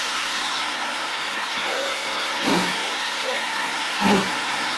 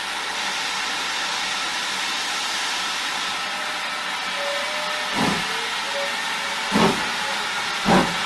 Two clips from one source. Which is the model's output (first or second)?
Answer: first